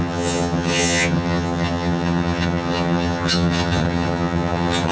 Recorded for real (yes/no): no